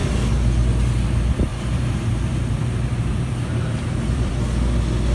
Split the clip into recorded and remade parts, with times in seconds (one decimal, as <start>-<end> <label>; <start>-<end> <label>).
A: 0.0-1.5 recorded; 1.5-4.3 remade; 4.3-5.1 recorded